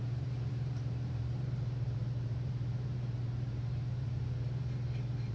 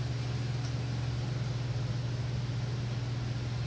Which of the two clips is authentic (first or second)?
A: second